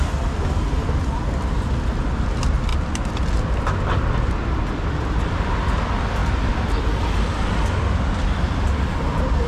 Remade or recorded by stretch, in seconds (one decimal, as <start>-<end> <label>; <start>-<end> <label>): 0.0-9.5 recorded